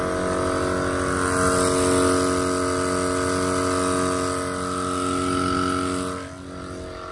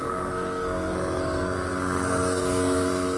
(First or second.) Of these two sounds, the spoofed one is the second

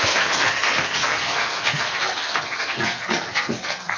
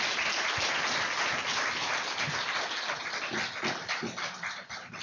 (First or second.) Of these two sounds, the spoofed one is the first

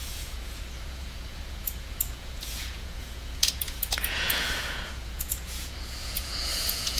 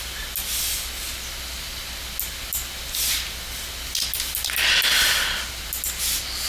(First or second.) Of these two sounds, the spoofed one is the first